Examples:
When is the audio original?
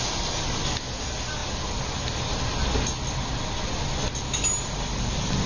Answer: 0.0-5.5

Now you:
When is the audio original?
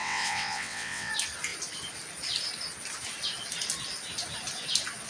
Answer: 1.1-5.1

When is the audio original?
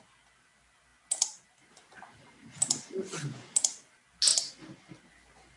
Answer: 0.0-5.6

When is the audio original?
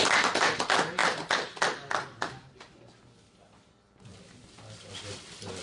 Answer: 0.0-5.6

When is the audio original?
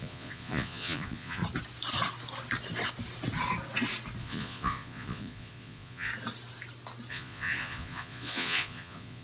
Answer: 1.4-4.2; 6.1-7.1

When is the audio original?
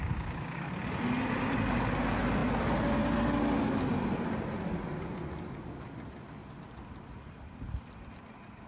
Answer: 0.7-8.7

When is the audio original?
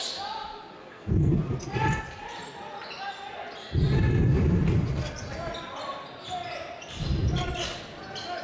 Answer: 0.0-0.8; 1.3-8.4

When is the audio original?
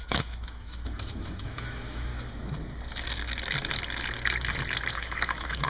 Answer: 2.1-4.9